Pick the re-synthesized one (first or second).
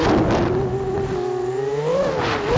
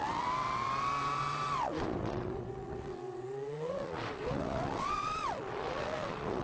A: second